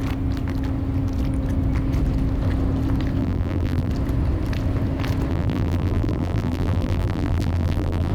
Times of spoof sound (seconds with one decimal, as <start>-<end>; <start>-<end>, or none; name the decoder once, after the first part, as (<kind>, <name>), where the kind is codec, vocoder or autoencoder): 3.2-3.9 (vocoder, BigVGAN v2); 5.3-8.1